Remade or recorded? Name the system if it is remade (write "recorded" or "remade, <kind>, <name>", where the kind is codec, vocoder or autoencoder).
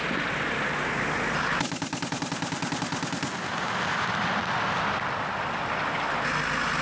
recorded